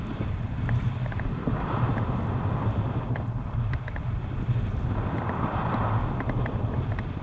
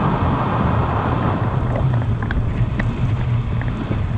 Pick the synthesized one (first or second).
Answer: first